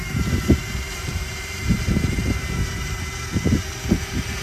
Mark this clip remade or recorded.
remade